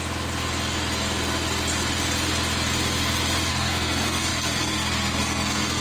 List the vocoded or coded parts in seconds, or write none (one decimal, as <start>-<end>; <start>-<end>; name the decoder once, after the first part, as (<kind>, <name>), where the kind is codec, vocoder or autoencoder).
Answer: 3.5-5.8 (codec, SNAC)